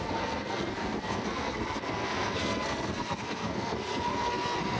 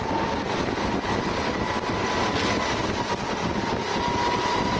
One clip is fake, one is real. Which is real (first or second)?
second